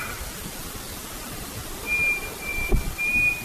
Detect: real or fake real